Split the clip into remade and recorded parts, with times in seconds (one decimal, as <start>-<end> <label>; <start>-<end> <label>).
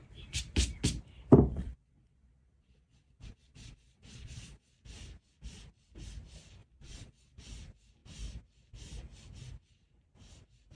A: 0.0-1.5 recorded; 1.5-4.7 remade; 4.7-6.6 recorded; 6.6-7.5 remade; 7.5-10.7 recorded